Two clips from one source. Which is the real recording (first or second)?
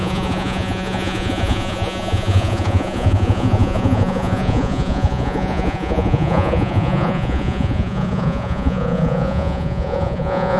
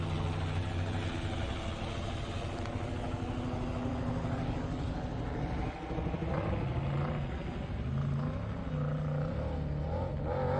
second